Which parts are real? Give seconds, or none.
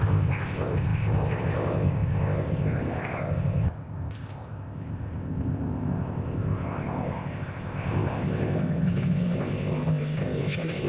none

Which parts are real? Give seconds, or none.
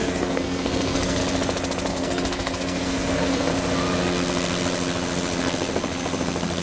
1.2-1.9; 3.5-6.6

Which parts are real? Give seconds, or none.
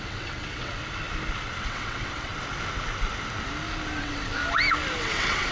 0.8-1.6; 2.3-4.0; 4.4-5.0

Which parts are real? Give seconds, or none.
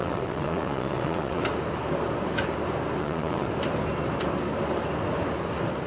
1.4-3.0; 3.5-5.9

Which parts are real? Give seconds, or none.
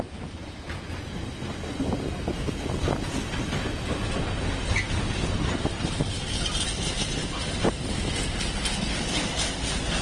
0.0-10.0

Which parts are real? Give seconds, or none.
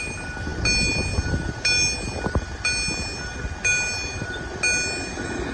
0.0-5.5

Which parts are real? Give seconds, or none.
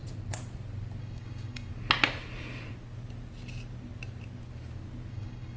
0.0-1.0; 1.7-5.1